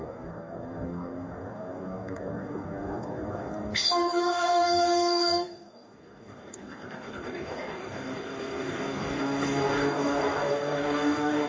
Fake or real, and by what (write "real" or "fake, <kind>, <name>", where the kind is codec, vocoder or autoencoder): fake, codec, DAC